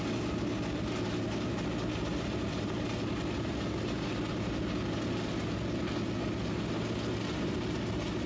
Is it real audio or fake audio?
real